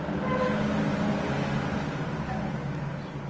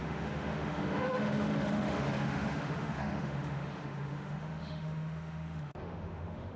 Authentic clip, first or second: first